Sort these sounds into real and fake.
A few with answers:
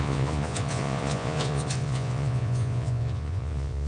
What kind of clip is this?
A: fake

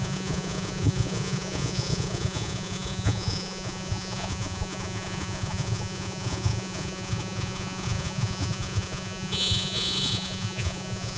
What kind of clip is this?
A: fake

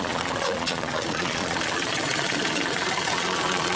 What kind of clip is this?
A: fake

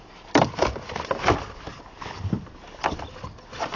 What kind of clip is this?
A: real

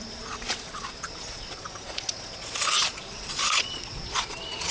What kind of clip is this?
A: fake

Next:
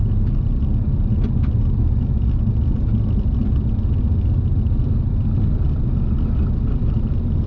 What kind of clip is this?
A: real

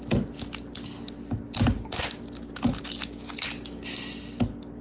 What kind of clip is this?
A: real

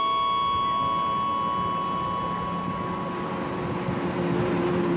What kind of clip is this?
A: real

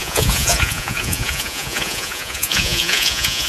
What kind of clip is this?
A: fake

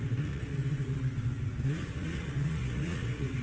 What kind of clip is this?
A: fake